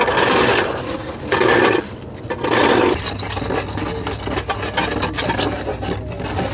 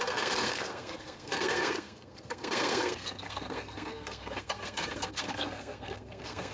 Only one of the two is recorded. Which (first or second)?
first